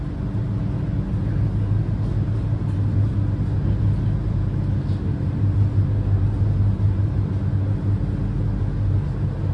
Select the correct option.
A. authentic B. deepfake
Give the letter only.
A